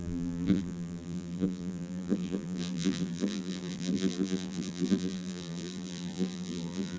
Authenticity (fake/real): fake